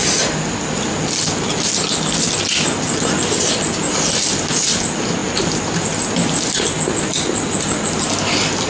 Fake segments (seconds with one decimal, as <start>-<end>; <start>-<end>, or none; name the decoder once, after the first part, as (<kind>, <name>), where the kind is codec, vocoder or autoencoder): none